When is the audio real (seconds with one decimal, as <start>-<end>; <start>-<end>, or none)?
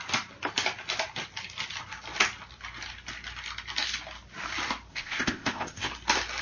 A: 0.0-4.9; 5.9-6.4